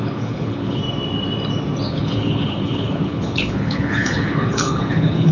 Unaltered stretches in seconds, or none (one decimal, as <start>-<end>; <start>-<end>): 0.8-1.9

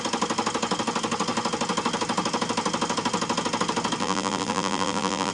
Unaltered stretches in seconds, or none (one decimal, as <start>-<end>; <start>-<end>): 0.0-4.0

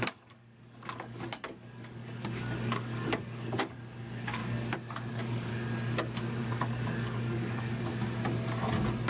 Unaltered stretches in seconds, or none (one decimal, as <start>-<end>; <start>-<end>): 4.4-5.1; 5.5-6.4; 7.9-9.1

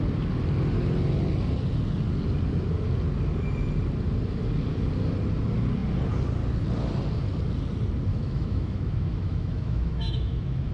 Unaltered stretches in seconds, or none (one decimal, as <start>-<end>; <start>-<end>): 0.0-8.1

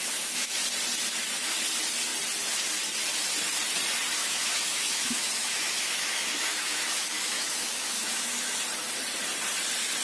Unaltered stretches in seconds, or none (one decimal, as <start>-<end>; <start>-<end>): 0.6-4.2; 8.6-10.0